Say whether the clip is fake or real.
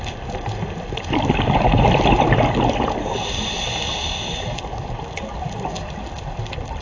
real